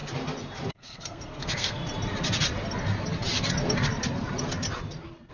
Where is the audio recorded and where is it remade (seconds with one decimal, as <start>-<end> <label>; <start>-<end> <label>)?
0.0-0.7 recorded; 0.7-1.8 remade; 1.8-5.3 recorded